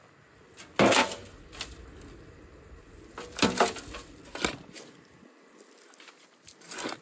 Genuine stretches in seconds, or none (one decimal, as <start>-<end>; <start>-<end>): 0.0-7.0